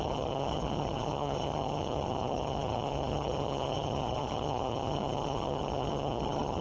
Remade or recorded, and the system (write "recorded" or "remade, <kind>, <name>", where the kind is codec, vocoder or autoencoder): remade, vocoder, HiFi-GAN